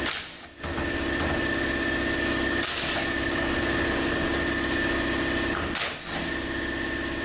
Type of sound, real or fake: real